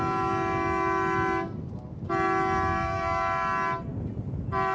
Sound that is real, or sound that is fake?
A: real